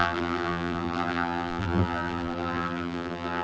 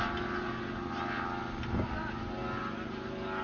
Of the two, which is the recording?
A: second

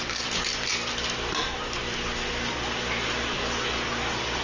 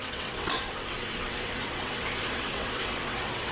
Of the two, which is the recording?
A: first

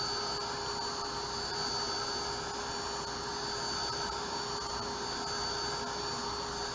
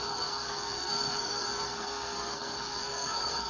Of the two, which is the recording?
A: first